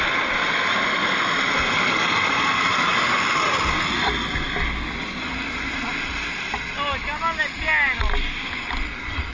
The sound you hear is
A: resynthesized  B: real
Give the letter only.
B